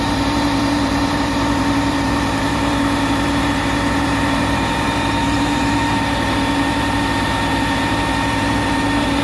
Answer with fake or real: fake